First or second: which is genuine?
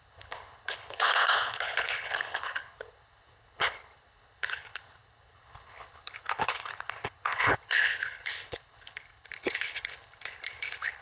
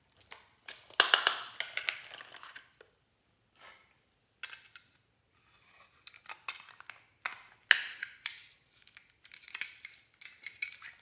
second